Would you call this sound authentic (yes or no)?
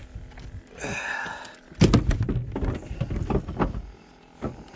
yes